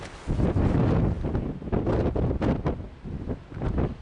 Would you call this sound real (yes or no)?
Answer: yes